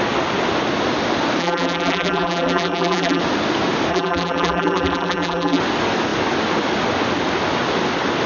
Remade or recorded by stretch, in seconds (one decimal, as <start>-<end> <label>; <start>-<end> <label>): 0.0-1.4 recorded; 1.4-3.2 remade; 3.2-3.9 recorded; 3.9-5.6 remade; 5.6-8.3 recorded